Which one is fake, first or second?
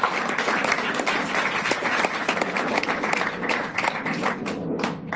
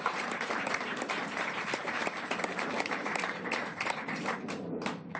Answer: second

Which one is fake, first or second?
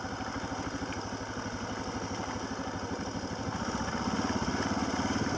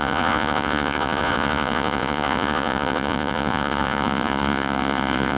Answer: second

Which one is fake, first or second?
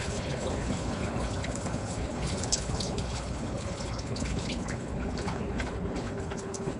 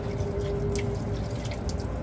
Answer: first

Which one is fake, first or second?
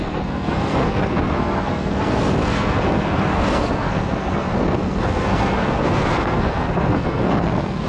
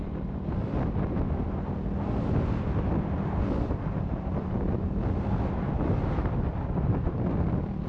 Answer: first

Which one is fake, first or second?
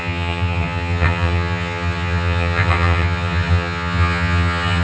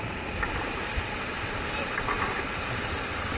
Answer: first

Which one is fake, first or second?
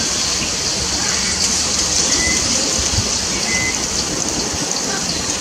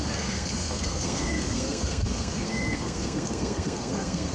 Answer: second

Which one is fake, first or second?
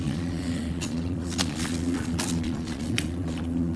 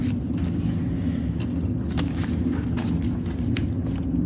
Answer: first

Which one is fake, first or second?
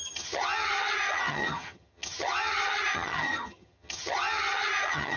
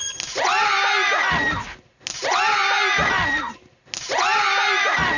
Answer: first